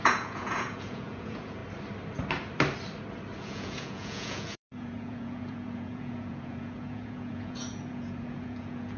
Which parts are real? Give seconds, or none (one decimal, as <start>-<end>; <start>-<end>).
1.6-3.4